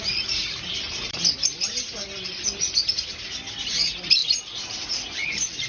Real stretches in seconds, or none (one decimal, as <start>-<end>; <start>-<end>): 1.2-3.5